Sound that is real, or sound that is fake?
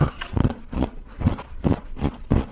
fake